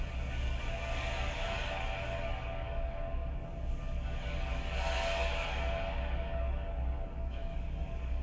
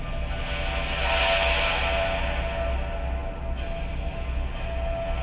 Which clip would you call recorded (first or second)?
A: second